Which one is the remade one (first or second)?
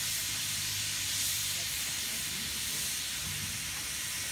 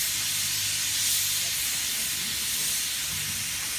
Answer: first